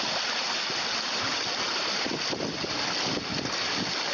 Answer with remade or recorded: recorded